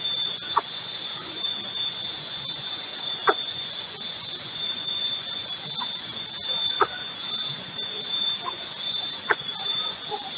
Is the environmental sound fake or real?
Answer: fake